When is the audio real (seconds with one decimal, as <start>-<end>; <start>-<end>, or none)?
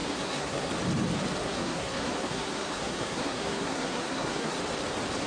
0.7-1.4; 4.6-5.3